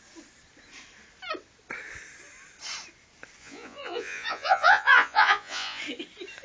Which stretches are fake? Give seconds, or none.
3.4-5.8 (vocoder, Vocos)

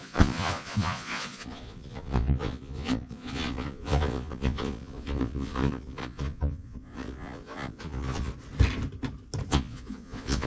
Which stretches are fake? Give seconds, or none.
0.0-8.3 (vocoder, Vocos); 9.5-10.5

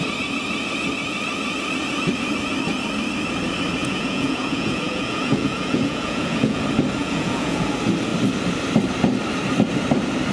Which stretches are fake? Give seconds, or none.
3.8-6.6 (vocoder, Vocos); 7.0-7.7

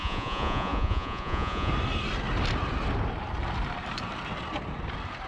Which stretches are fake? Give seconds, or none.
0.0-1.7 (vocoder, Vocos)

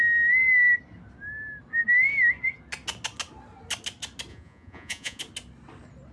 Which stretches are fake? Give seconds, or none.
4.3-5.2 (vocoder, Vocos)

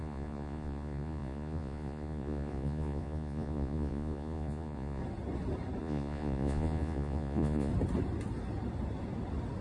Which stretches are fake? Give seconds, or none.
0.0-5.0 (vocoder, Vocos); 5.8-7.7

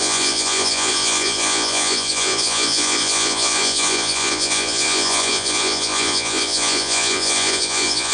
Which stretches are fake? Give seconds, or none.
0.0-8.1 (vocoder, Vocos)

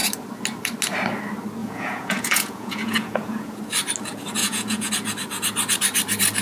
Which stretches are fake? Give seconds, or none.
1.6-3.6 (vocoder, Vocos); 4.4-4.9